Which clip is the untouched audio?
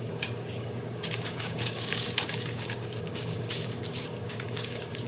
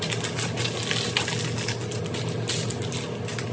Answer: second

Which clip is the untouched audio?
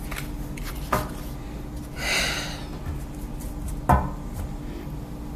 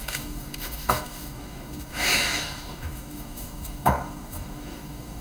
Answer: first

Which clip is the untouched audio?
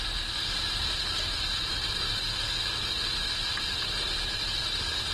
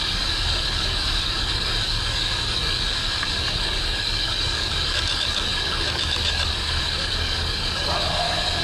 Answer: first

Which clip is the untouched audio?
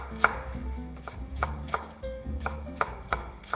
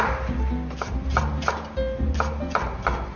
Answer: second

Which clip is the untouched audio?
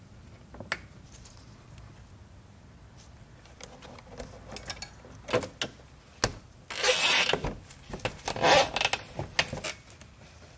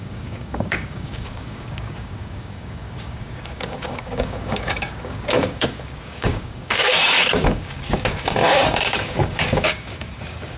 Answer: first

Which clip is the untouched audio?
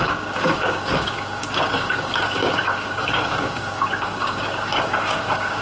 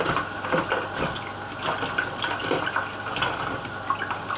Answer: second